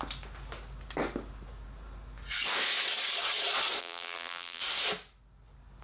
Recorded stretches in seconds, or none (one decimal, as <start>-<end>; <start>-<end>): 0.0-3.8; 4.6-5.8